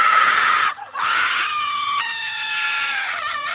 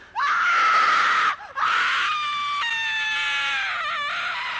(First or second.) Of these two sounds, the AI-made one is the first